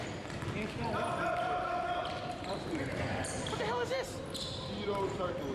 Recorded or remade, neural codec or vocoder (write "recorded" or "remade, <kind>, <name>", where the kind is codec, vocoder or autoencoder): remade, vocoder, BigVGAN v2